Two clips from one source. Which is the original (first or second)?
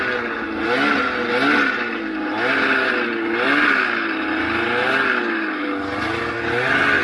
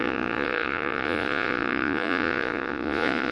first